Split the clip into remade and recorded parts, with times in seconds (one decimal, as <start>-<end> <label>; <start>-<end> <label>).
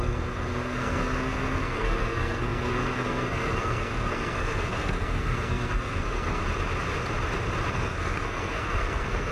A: 0.0-6.4 remade; 6.4-7.7 recorded; 7.7-9.3 remade